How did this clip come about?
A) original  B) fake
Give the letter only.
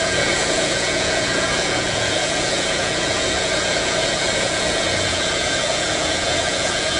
B